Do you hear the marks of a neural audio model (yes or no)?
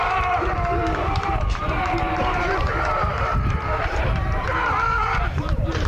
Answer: yes